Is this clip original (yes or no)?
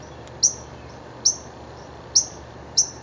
yes